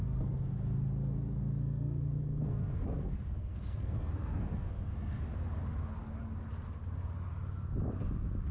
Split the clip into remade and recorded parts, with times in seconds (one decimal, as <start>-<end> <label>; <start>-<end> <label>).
0.0-0.5 remade; 0.5-1.4 recorded; 1.4-5.2 remade; 5.2-8.5 recorded